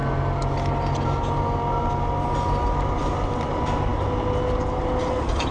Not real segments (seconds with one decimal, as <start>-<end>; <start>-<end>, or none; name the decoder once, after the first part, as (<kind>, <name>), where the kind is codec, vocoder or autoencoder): none